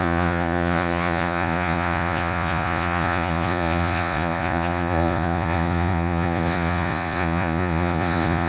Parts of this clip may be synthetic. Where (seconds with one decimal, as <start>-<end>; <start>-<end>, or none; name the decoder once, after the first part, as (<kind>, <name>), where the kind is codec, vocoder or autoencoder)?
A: 0.0-8.5 (vocoder, Vocos)